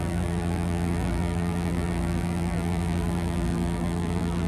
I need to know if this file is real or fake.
fake